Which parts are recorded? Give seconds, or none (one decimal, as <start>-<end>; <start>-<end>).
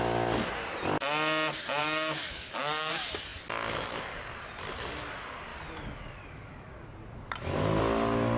0.0-1.8; 2.9-8.4